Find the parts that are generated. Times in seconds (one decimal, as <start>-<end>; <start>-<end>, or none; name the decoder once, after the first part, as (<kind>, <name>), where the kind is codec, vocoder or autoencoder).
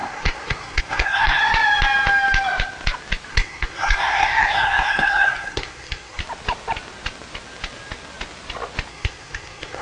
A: 0.0-1.4 (codec, SNAC); 3.3-6.2; 8.9-9.8